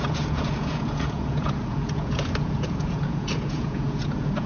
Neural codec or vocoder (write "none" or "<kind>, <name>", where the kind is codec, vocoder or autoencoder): vocoder, Vocos